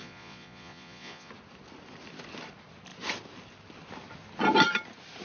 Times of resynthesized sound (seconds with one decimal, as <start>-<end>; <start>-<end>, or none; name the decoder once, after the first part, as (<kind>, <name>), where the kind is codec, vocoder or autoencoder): 0.0-1.3 (vocoder, Vocos)